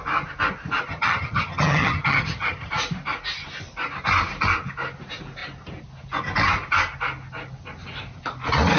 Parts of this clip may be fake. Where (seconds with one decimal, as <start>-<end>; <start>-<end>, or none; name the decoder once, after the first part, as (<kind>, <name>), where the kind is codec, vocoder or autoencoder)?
0.9-2.7 (vocoder, HiFi-GAN)